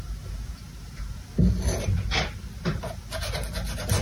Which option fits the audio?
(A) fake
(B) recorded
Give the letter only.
B